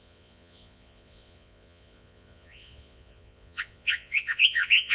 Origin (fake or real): fake